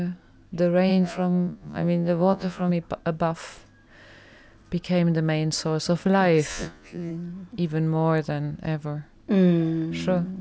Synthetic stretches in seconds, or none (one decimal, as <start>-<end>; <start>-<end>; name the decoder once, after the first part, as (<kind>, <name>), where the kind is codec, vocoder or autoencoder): 0.9-2.7 (vocoder, Vocos); 6.5-7.1